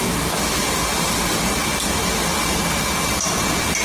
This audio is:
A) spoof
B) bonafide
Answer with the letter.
B